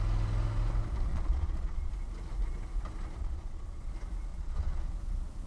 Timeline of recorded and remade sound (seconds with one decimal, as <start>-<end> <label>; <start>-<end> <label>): 0.0-1.1 recorded; 1.1-1.9 remade; 1.9-3.2 recorded; 3.2-3.9 remade; 3.9-4.3 recorded; 4.3-4.9 remade; 4.9-5.5 recorded